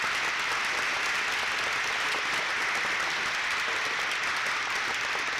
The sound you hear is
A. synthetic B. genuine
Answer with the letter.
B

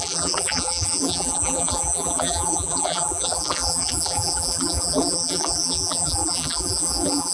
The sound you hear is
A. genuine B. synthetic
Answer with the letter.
B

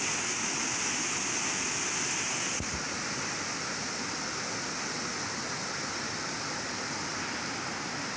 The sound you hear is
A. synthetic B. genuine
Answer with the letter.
B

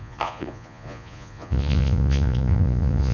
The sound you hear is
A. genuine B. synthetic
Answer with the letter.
B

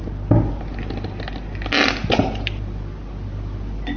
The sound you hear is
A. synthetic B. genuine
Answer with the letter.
B